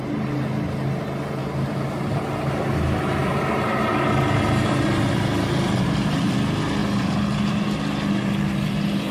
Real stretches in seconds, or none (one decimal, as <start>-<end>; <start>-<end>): 0.0-9.1